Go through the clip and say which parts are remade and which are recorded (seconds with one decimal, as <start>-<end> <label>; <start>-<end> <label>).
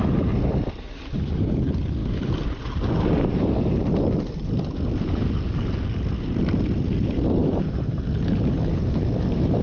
0.0-2.0 recorded; 2.0-3.5 remade; 3.5-7.4 recorded; 7.4-8.0 remade; 8.0-9.6 recorded